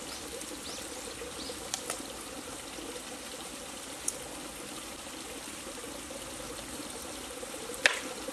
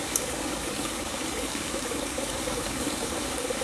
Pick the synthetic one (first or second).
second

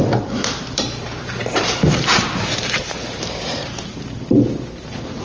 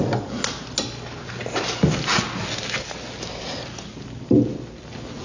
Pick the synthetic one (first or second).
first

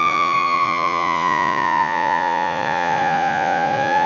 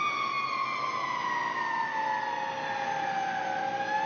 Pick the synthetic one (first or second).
first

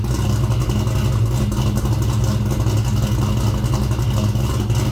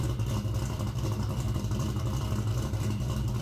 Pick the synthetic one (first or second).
second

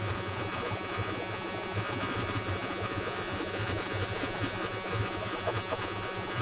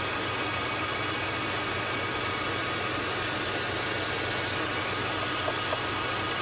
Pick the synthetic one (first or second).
first